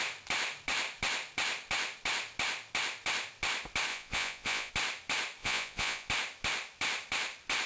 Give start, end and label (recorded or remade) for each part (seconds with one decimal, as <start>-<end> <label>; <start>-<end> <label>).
0.0-3.9 recorded; 3.9-4.7 remade; 4.7-5.4 recorded; 5.4-6.1 remade; 6.1-7.7 recorded

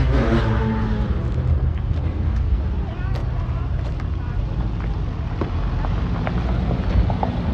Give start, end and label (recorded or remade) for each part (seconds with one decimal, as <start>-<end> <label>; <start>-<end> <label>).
0.0-1.5 recorded; 1.5-2.6 remade; 2.6-7.5 recorded

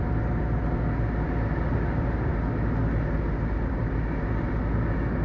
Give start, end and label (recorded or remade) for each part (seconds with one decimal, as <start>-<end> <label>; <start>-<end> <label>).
0.0-5.2 recorded

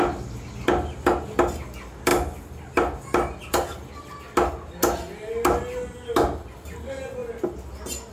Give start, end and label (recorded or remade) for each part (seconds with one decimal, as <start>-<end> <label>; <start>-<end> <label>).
0.0-8.1 recorded

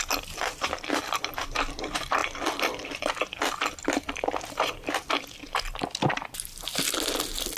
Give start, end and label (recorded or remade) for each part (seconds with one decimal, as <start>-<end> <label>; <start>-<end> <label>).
0.0-7.6 recorded

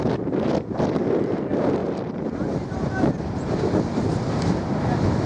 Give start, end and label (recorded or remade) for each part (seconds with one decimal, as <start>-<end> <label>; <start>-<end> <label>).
0.0-5.3 recorded

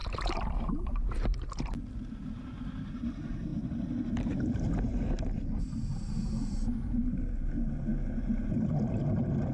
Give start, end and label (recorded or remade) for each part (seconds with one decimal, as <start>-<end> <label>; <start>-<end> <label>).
0.0-1.8 remade; 1.8-9.5 recorded